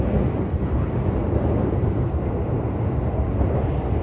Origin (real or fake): fake